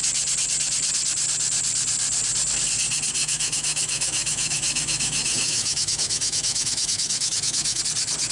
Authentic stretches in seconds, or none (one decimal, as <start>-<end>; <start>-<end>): 0.0-3.2; 7.8-8.3